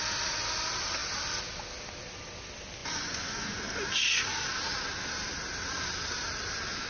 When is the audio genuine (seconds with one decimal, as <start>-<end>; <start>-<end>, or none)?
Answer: 0.0-2.8; 3.6-6.9